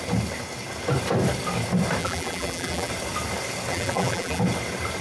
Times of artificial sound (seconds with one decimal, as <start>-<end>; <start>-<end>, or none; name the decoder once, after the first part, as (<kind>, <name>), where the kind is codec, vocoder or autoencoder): 2.0-2.9 (vocoder, BigVGAN v2); 3.7-4.4